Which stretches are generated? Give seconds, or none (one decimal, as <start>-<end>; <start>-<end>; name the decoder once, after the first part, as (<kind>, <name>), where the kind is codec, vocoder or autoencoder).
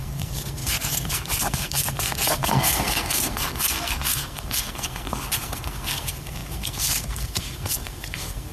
0.0-8.5 (codec, SNAC)